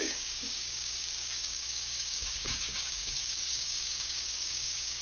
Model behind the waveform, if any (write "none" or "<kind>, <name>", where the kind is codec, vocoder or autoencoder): codec, DAC